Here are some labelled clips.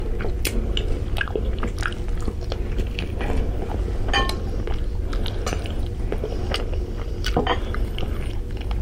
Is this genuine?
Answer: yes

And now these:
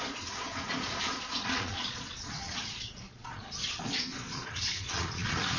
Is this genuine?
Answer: no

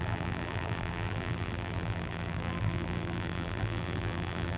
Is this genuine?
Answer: no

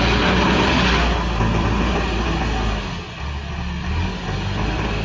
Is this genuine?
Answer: yes